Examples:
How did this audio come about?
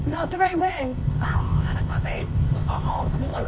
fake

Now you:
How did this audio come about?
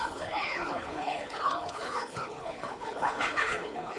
fake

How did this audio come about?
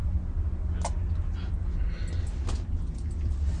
real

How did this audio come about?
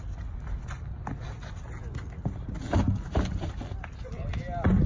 real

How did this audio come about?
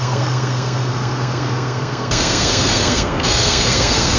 fake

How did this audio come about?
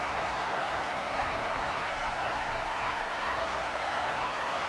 fake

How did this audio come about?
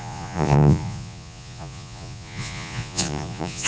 fake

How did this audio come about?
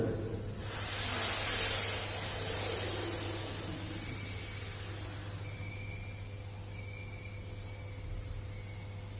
real